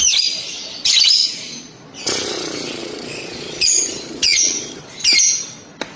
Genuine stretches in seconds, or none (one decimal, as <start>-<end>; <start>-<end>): 0.0-1.2; 1.8-2.8; 4.8-6.0